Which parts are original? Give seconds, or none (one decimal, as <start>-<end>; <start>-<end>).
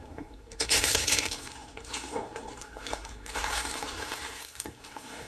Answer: none